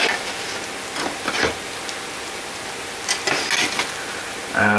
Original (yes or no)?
yes